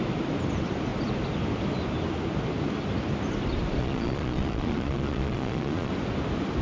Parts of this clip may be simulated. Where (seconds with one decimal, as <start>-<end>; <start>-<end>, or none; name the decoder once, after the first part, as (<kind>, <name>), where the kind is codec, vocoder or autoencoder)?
3.8-5.9 (vocoder, Vocos)